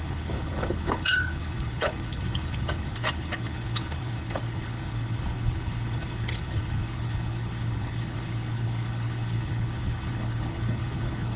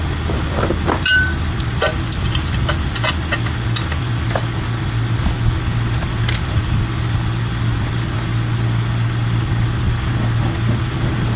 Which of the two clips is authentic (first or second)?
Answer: second